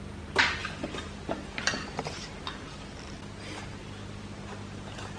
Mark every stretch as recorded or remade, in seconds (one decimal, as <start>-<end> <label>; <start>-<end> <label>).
0.0-5.2 recorded